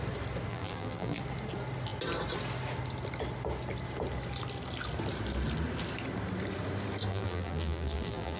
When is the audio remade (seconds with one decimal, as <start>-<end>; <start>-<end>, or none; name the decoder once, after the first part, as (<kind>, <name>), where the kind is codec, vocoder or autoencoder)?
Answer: 0.5-1.2 (vocoder, BigVGAN v2); 7.1-8.4